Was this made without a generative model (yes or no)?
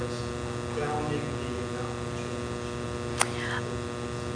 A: yes